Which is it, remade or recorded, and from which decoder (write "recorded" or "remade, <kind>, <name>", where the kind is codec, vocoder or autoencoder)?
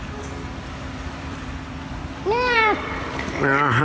remade, vocoder, BigVGAN v2